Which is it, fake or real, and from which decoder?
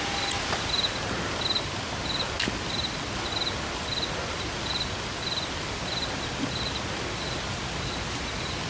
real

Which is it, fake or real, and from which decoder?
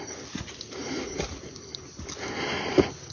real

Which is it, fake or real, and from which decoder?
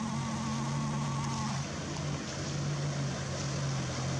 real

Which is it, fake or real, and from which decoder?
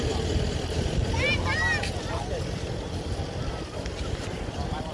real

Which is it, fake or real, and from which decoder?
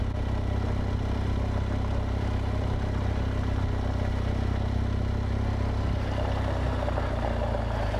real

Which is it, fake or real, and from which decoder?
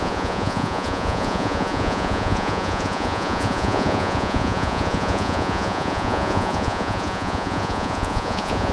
fake, vocoder, Vocos